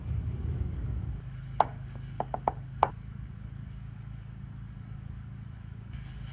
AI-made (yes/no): yes